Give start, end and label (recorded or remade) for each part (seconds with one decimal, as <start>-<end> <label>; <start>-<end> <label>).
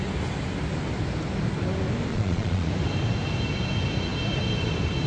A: 0.0-2.1 recorded; 2.1-2.7 remade; 2.7-5.1 recorded